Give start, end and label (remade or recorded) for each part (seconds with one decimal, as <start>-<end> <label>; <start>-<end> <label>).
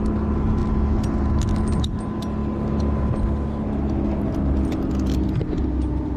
0.0-6.2 recorded